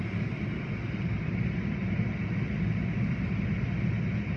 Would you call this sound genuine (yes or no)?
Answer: yes